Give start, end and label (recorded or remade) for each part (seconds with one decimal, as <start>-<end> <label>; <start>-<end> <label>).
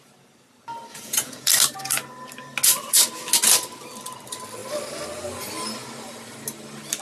0.0-0.9 recorded; 0.9-1.5 remade; 1.5-7.0 recorded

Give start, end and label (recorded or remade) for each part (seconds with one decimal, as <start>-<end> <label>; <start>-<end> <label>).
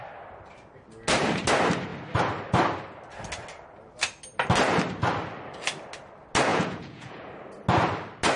0.0-6.5 recorded; 6.5-7.3 remade; 7.3-8.4 recorded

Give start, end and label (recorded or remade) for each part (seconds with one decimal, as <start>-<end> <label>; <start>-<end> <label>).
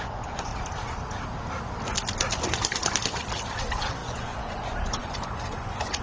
0.0-0.5 remade; 0.5-3.6 recorded; 3.6-6.0 remade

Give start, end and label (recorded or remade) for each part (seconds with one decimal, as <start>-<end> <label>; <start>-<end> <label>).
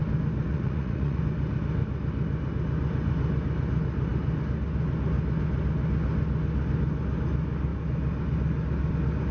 0.0-0.5 recorded; 0.5-1.2 remade; 1.2-9.3 recorded